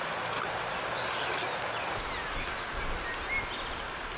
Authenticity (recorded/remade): recorded